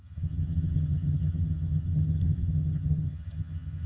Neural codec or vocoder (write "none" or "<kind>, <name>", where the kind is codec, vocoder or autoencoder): vocoder, HiFi-GAN